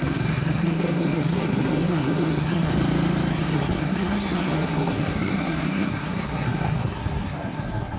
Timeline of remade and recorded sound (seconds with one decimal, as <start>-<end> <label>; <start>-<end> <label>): 0.0-2.7 remade; 2.7-3.3 recorded; 3.3-8.0 remade

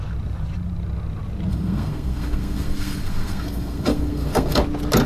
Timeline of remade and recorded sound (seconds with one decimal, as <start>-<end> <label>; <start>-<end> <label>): 0.0-1.5 recorded; 1.5-4.6 remade; 4.6-5.1 recorded

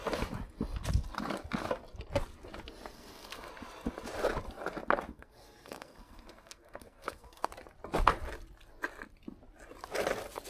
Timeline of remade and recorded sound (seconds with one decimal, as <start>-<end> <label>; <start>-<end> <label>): 0.0-2.9 recorded; 2.9-3.5 remade; 3.5-5.1 recorded; 5.1-7.5 remade; 7.5-10.5 recorded

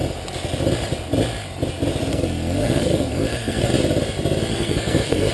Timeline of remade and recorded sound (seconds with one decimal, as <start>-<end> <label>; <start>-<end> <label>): 0.0-2.1 recorded; 2.1-3.7 remade; 3.7-4.5 recorded; 4.5-5.3 remade